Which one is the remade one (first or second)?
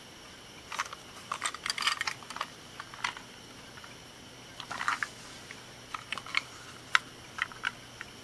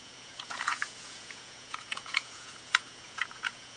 second